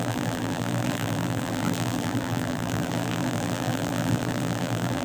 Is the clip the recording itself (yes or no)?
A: no